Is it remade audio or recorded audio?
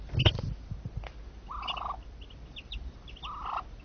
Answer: recorded